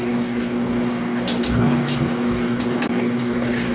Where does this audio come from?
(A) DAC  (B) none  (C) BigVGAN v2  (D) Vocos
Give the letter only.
A